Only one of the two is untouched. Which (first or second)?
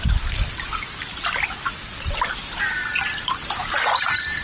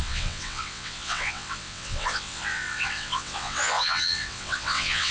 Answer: first